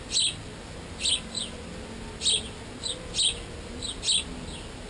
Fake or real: real